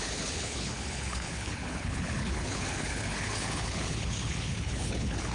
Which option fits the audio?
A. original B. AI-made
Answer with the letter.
B